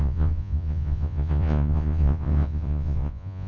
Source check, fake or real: fake